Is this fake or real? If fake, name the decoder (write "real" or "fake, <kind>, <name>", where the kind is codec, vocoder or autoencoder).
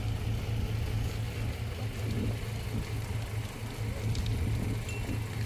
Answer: real